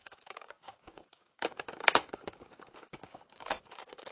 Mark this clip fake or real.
fake